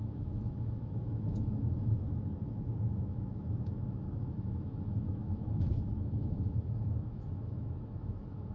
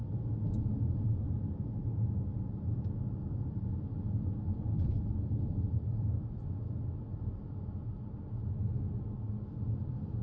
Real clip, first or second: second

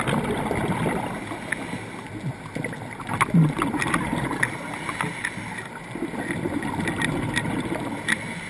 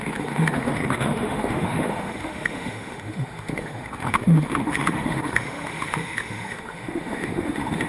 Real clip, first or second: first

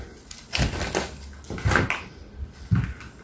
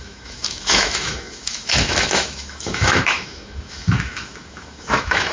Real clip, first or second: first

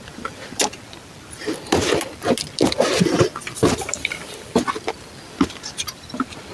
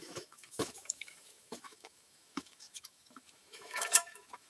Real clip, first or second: first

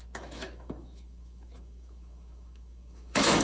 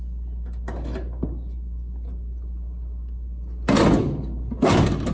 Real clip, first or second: second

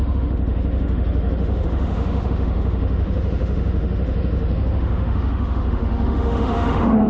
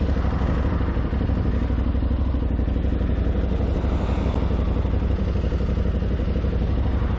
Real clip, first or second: second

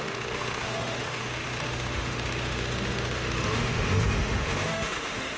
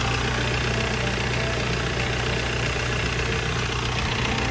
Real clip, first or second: second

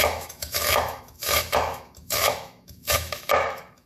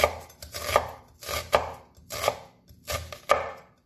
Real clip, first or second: second